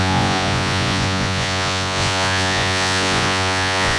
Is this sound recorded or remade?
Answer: remade